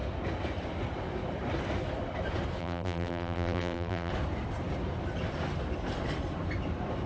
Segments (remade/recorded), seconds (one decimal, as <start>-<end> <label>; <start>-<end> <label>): 0.0-2.6 recorded; 2.6-4.1 remade; 4.1-7.1 recorded